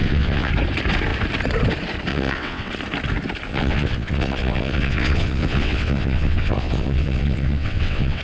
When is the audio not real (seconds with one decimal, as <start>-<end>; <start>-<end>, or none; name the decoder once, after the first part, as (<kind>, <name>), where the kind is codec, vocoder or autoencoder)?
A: 0.0-0.5 (vocoder, WaveNeXt); 2.1-2.7; 3.5-8.2